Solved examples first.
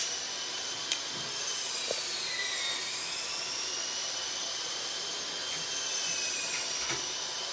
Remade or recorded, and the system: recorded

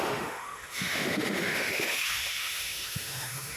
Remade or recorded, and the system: remade, autoencoder, DAC-VAE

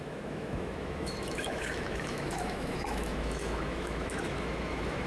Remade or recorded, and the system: remade, autoencoder, DAC-VAE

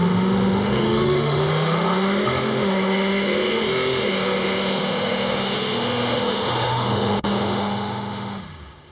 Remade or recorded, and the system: remade, autoencoder, DAC-VAE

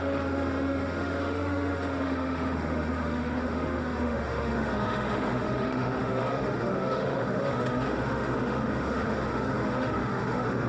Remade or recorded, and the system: remade, autoencoder, DAC-VAE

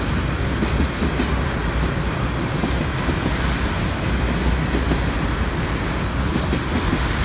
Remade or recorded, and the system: recorded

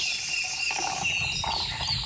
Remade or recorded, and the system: recorded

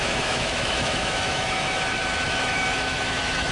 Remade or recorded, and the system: remade, autoencoder, DAC-VAE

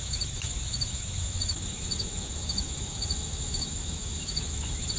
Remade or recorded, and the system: remade, autoencoder, DAC-VAE